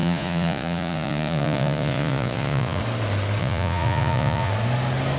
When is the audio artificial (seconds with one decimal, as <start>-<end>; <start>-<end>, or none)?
0.0-2.8; 3.4-4.5